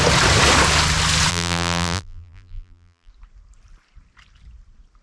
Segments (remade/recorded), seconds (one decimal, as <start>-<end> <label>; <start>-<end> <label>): 0.0-1.3 recorded; 1.3-3.1 remade; 3.1-5.0 recorded